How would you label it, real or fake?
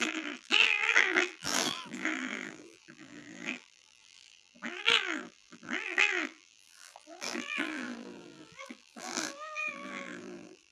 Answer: fake